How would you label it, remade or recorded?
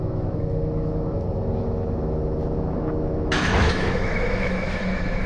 remade